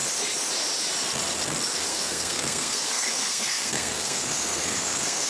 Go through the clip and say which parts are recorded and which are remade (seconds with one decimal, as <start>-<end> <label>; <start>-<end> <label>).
0.0-1.9 recorded; 1.9-5.3 remade